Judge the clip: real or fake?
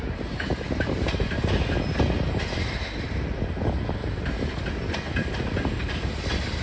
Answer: real